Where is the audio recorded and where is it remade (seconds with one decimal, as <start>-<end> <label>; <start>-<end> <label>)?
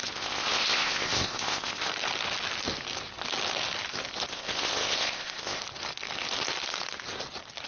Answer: 0.0-1.9 remade; 1.9-4.3 recorded; 4.3-5.6 remade; 5.6-7.7 recorded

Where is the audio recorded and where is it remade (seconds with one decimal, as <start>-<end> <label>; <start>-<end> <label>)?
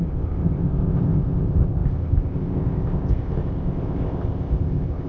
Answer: 0.0-5.1 remade